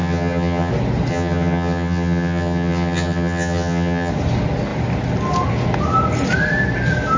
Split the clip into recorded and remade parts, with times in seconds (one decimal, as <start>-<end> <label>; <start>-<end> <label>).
0.0-0.7 remade; 0.7-1.1 recorded; 1.1-4.1 remade; 4.1-7.2 recorded